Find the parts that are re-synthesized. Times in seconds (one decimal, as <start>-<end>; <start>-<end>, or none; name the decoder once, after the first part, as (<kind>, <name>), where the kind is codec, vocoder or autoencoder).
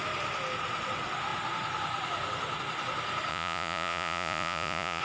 3.3-5.0 (vocoder, Vocos)